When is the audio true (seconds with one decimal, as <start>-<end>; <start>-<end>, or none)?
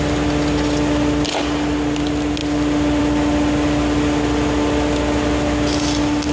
0.0-6.3